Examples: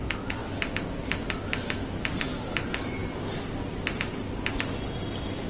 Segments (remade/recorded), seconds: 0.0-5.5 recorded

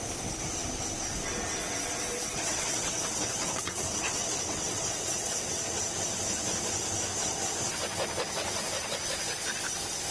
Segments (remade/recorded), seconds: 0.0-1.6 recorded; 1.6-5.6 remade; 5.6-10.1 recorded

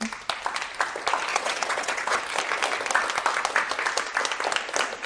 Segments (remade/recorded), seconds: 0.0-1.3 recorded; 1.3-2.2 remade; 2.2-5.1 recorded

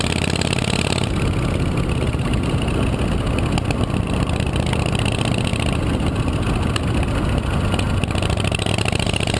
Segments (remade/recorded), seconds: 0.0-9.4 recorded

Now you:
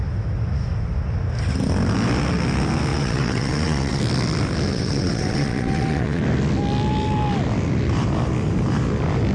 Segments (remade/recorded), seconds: 0.0-2.9 recorded; 2.9-4.0 remade; 4.0-4.7 recorded; 4.7-6.2 remade; 6.2-9.3 recorded

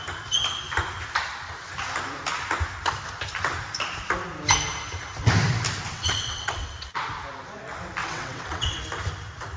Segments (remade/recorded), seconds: 0.0-5.9 recorded; 5.9-7.1 remade; 7.1-8.0 recorded; 8.0-8.8 remade; 8.8-9.6 recorded

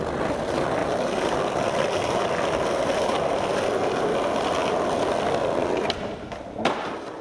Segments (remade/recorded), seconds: 0.0-7.2 recorded